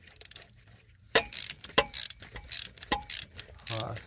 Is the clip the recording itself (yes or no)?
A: no